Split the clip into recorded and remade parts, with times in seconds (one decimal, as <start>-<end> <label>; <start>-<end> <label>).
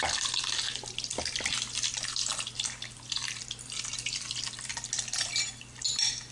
0.0-6.3 recorded